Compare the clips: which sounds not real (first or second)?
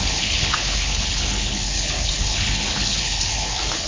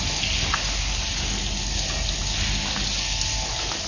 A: first